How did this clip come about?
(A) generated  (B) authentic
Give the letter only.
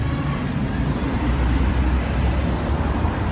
A